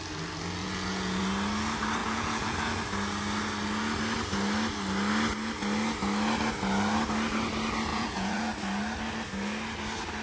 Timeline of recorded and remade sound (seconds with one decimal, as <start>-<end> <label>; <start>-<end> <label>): 0.0-0.6 recorded; 0.6-1.2 remade; 1.2-2.0 recorded; 2.0-2.7 remade; 2.7-7.9 recorded; 7.9-8.5 remade; 8.5-10.2 recorded